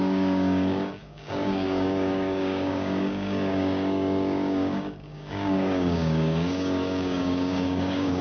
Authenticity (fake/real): fake